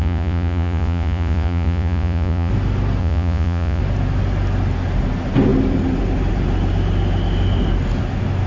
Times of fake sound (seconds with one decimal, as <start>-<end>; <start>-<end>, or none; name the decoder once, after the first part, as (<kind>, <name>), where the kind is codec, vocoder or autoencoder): 0.0-2.5 (vocoder, Vocos); 3.0-3.8